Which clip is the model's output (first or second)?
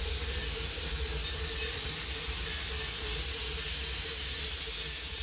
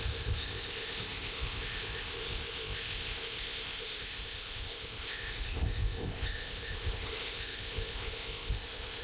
second